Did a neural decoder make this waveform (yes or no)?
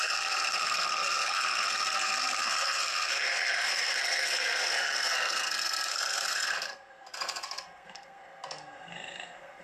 yes